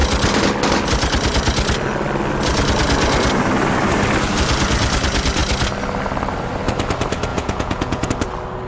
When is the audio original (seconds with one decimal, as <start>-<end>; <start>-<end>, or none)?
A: 0.0-7.3; 8.1-8.7